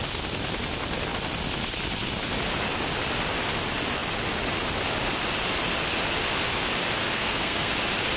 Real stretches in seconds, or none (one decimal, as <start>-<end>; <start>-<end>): 0.0-7.0; 7.7-8.2